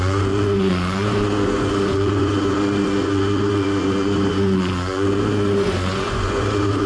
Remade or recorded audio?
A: remade